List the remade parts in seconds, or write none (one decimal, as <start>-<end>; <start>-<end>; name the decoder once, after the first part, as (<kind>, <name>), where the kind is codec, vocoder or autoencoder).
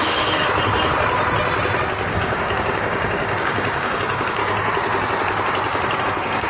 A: 0.0-0.4 (codec, DAC); 2.1-4.4; 6.0-6.5